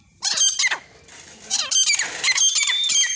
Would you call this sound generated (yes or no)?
no